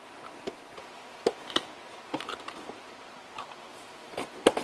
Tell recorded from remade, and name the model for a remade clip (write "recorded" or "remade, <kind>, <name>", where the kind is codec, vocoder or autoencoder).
recorded